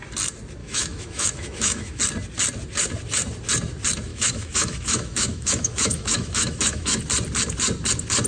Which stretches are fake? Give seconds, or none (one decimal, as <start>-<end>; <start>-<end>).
0.6-2.0; 4.1-7.0